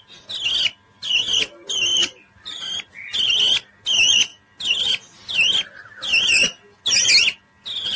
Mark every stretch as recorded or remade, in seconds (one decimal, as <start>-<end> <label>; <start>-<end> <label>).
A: 0.0-8.0 recorded